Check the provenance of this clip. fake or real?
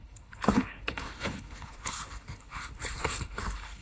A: fake